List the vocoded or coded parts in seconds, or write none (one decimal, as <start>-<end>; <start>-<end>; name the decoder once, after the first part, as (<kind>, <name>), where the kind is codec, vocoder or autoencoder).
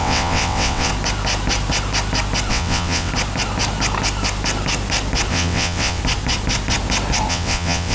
0.0-0.9 (vocoder, WaveNeXt); 2.5-3.1; 5.3-6.0; 7.3-7.9